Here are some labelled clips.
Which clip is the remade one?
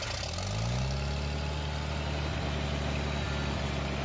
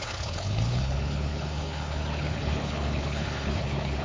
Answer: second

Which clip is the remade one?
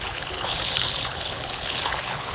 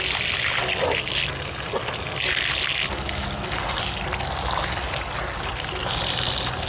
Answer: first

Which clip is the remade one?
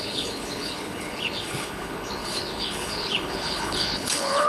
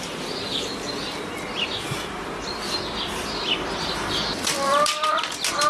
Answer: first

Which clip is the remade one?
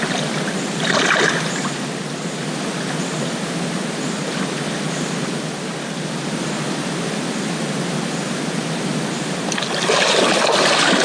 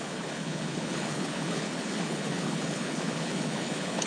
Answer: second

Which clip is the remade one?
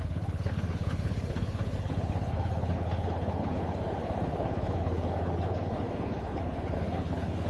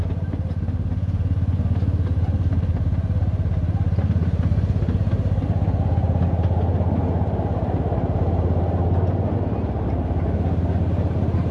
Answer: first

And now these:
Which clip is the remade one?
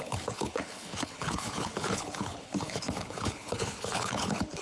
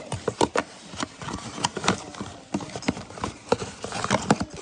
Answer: first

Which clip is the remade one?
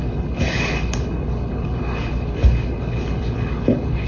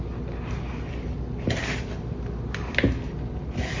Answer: first